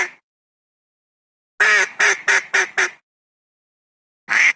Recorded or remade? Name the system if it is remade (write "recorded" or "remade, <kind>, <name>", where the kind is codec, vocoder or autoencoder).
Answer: recorded